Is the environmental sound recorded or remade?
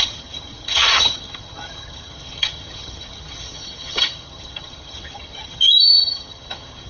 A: remade